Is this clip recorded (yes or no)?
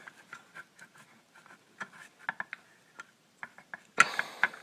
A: yes